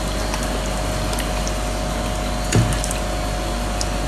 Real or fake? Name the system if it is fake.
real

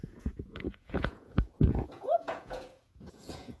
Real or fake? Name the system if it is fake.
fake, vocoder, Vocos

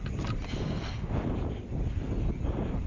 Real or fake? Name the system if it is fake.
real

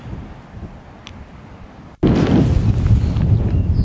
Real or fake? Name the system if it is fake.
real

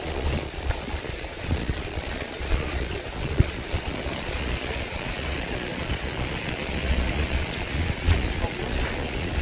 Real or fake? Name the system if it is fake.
fake, vocoder, Vocos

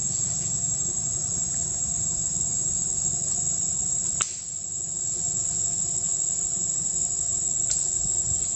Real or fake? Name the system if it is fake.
real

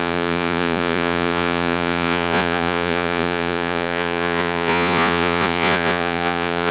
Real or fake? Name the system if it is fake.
fake, vocoder, Vocos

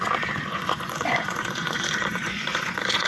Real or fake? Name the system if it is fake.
fake, vocoder, Vocos